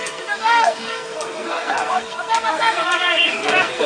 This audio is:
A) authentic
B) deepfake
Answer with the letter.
B